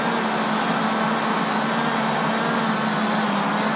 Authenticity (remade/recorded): recorded